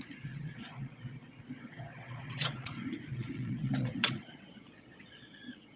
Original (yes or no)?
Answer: no